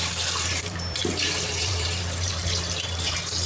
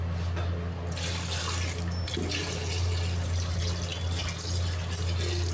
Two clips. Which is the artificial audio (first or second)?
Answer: first